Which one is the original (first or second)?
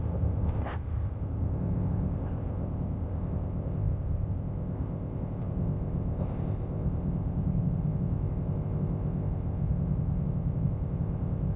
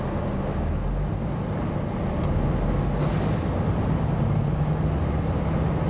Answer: second